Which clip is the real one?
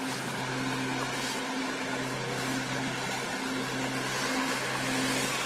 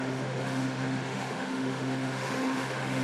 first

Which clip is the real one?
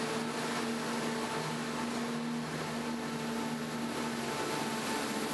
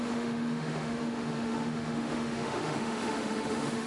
first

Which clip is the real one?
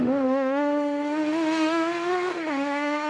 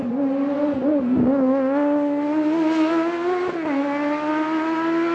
second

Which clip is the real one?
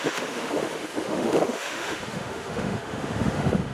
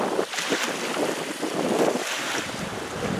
second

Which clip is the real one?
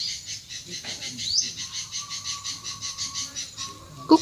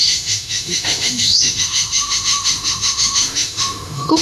first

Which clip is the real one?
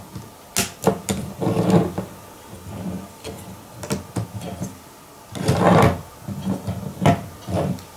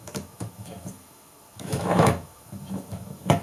first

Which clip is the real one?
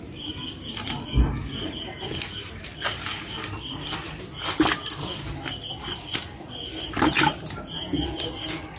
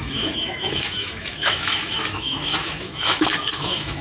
first